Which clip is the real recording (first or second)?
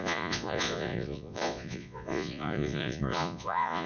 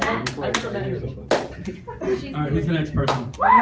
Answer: second